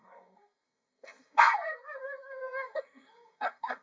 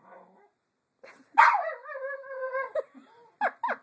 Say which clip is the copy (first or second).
first